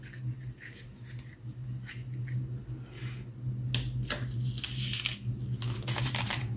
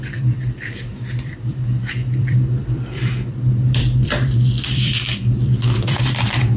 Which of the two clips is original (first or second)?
first